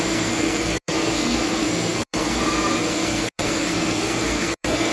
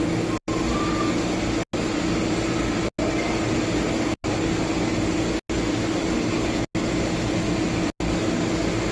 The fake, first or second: first